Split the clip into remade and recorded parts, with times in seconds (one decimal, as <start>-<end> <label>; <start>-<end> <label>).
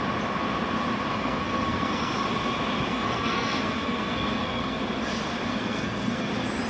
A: 0.0-1.1 recorded; 1.1-2.1 remade; 2.1-2.9 recorded; 2.9-4.8 remade; 4.8-5.5 recorded; 5.5-6.3 remade; 6.3-6.7 recorded